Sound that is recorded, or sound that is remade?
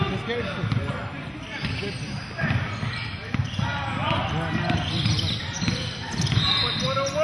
recorded